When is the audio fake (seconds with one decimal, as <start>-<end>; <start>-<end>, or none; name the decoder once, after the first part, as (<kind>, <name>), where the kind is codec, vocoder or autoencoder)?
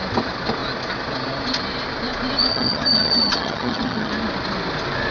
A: 2.5-4.1 (vocoder, HiFi-GAN)